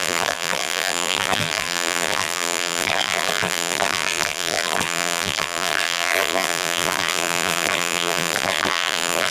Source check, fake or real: fake